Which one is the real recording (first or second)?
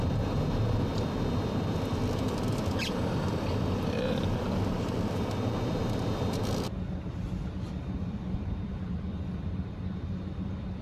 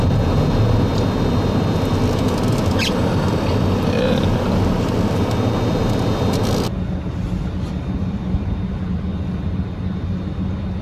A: second